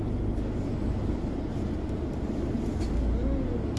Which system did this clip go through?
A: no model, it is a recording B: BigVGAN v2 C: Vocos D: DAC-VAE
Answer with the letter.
A